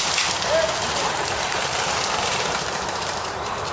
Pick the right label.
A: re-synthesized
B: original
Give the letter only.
B